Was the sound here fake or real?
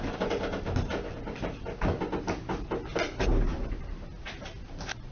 real